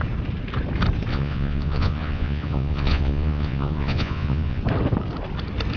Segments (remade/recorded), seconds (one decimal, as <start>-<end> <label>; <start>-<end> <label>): 0.0-1.1 recorded; 1.1-4.6 remade; 4.6-5.8 recorded